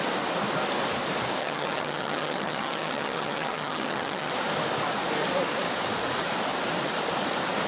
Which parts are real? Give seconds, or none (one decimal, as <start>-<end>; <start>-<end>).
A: 0.0-1.4; 4.3-7.7